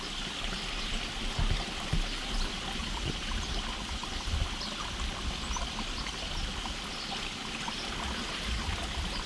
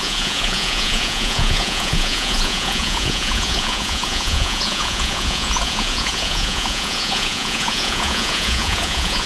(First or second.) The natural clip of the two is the first